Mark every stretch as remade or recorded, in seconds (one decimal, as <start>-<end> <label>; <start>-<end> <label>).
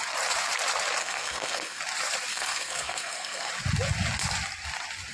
0.0-1.0 recorded; 1.0-1.8 remade; 1.8-2.3 recorded; 2.3-3.5 remade; 3.5-5.1 recorded